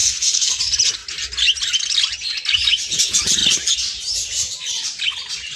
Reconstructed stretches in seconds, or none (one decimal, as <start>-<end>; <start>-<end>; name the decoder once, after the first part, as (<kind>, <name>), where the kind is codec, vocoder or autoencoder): 0.0-0.6 (codec, SNAC)